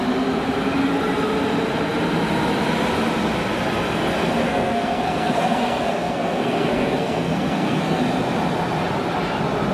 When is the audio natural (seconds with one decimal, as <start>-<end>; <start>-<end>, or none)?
0.0-4.4; 8.0-9.7